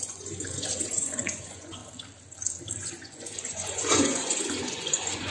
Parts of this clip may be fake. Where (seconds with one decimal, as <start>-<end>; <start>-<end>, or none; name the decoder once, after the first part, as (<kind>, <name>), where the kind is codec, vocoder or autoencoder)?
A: 0.0-1.8 (vocoder, Vocos); 2.8-5.3